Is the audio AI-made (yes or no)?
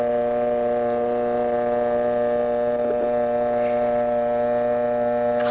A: no